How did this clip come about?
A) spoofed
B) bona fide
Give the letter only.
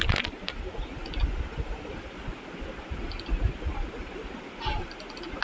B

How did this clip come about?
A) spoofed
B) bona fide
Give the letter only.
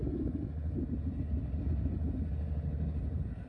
B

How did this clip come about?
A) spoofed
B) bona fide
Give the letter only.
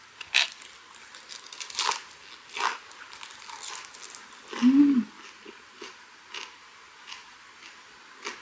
B